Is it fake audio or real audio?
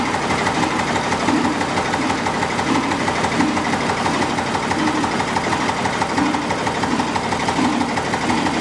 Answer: real